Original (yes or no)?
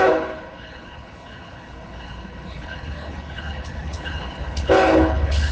no